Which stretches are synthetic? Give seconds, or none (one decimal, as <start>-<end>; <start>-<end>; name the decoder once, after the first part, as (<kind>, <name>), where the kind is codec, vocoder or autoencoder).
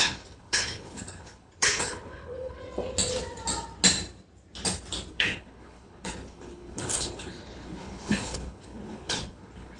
0.0-2.6 (codec, HILCodec); 5.1-9.8